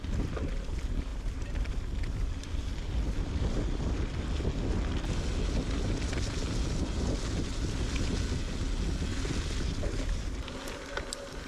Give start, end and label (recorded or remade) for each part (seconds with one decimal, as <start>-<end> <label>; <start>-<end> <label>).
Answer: 0.0-11.5 recorded